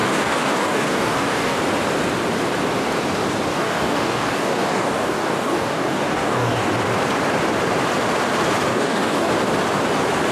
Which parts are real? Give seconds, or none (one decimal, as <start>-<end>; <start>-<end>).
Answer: 1.6-3.5; 6.7-8.7; 9.3-10.3

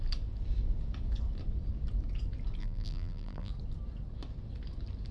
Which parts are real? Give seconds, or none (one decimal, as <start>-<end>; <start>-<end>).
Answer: 0.0-2.6; 3.5-5.1

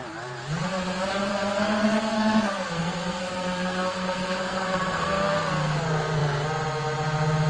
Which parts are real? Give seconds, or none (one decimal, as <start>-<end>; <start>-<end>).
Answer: 0.0-1.3; 5.8-7.5

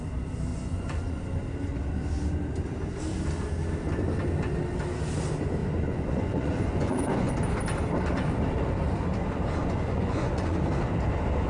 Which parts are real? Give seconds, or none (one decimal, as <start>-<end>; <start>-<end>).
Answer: 0.0-0.5; 1.2-5.6; 7.3-9.6; 10.6-11.5

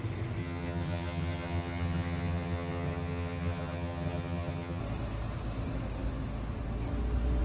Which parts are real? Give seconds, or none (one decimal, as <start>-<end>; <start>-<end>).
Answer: 0.0-0.4; 4.8-7.4

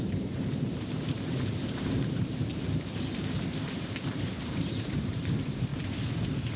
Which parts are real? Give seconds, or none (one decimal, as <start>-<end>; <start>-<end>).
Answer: 2.5-3.4; 5.7-6.6